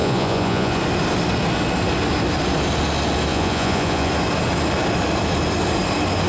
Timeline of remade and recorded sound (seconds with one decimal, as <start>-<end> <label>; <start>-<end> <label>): 0.0-0.8 remade; 0.8-3.3 recorded; 3.3-4.1 remade; 4.1-6.3 recorded